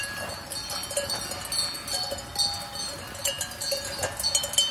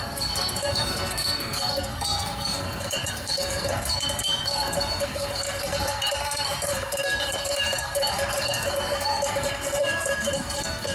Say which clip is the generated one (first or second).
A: second